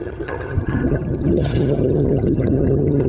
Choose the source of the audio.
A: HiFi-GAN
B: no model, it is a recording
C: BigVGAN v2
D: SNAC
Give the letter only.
A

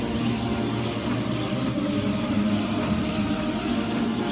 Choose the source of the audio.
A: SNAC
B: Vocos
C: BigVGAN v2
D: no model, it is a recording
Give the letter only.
D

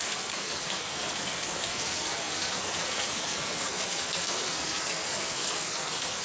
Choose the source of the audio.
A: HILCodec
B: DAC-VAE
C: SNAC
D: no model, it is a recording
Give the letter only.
C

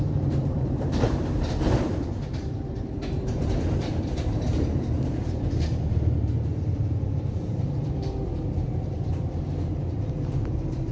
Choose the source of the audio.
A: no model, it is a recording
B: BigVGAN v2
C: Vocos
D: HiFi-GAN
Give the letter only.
B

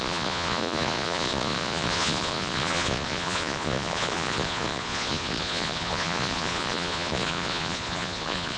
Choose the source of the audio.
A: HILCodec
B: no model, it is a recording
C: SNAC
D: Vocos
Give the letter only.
D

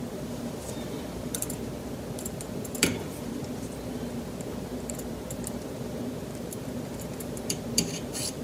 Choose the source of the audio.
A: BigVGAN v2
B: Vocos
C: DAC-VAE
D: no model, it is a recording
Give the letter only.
A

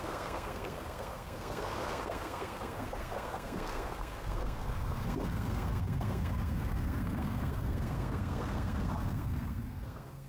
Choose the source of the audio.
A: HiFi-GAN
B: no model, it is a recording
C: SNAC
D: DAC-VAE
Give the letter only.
C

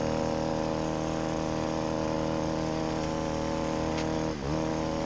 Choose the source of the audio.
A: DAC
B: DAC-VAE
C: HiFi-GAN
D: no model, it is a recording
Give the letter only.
D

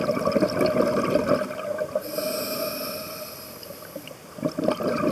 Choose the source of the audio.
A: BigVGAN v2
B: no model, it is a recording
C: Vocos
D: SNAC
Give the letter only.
B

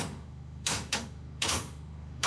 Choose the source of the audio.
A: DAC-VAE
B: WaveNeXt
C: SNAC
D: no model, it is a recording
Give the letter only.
A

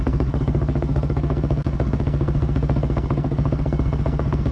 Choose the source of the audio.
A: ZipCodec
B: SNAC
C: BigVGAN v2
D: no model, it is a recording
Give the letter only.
B